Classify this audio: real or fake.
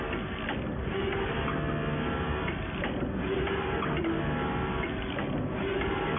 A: real